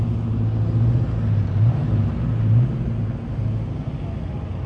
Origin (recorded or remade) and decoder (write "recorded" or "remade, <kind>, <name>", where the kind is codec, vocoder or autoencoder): recorded